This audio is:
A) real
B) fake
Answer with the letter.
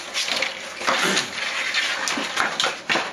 A